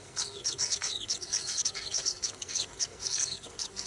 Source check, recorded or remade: remade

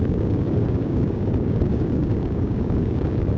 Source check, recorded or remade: remade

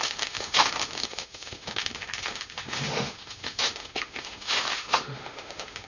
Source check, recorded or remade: remade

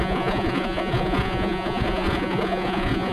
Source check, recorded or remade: remade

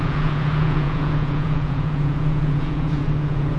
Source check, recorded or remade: remade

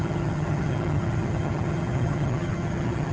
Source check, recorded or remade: remade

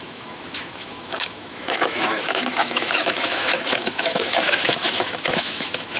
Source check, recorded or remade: remade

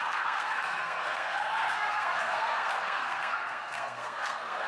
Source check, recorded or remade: remade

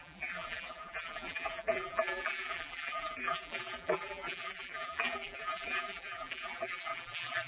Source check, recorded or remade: remade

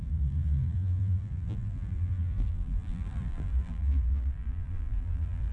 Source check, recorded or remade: remade